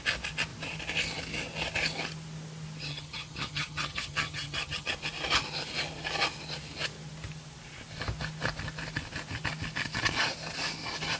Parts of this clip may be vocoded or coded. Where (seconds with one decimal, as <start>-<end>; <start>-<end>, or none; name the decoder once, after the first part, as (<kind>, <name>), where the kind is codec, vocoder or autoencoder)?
2.8-4.9 (vocoder, HiFi-GAN)